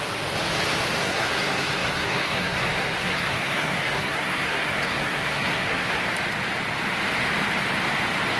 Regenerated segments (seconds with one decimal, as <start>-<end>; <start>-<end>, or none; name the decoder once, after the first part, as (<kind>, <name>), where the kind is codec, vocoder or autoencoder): 1.0-6.0 (codec, SNAC)